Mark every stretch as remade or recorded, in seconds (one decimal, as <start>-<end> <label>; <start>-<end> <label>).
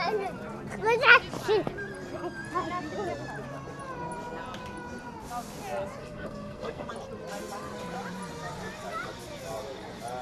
0.0-6.0 recorded; 6.0-6.9 remade; 6.9-10.2 recorded